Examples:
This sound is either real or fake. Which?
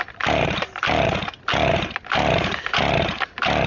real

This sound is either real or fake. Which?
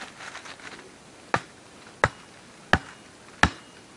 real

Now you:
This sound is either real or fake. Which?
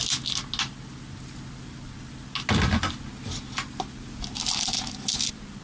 real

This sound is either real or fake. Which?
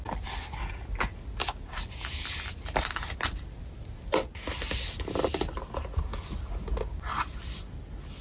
real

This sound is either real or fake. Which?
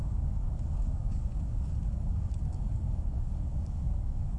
fake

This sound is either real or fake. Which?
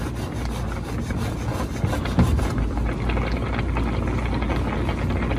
real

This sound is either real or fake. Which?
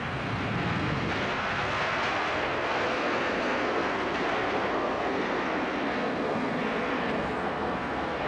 fake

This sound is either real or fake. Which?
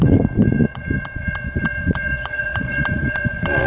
fake